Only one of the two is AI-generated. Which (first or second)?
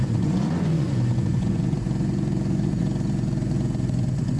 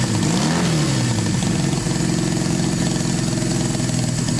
first